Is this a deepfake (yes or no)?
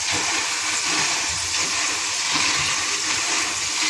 no